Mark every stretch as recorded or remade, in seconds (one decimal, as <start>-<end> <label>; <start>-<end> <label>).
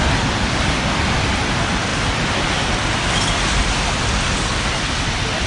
0.0-5.5 recorded